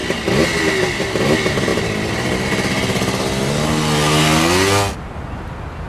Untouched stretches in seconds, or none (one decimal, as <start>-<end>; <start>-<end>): 0.0-5.9